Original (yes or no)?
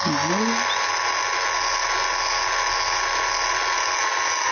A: yes